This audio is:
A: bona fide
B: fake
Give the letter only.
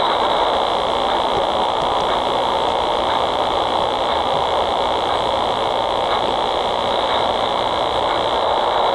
A